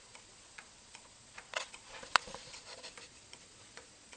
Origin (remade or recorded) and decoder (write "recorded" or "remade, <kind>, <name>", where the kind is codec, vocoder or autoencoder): remade, vocoder, Vocos